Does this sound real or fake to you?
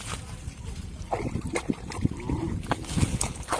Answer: real